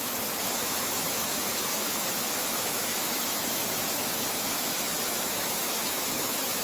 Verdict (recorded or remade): remade